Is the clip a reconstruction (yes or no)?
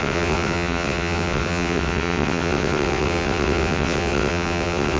yes